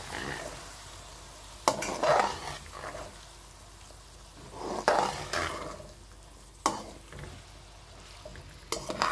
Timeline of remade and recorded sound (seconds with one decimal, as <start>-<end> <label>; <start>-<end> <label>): 0.0-9.1 recorded